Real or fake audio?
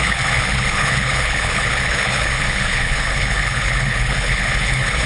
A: fake